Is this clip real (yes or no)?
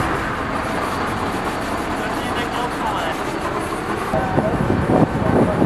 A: yes